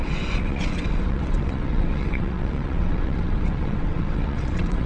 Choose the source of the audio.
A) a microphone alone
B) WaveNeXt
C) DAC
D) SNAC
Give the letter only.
B